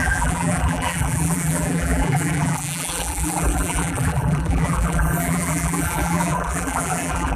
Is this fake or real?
fake